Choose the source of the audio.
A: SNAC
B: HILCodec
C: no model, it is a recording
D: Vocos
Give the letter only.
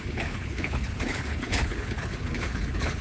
B